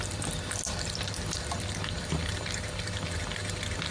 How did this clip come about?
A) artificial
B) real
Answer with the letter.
B